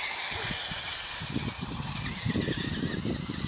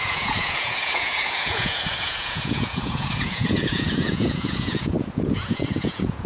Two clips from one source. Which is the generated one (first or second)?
second